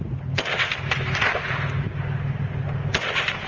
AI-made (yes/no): no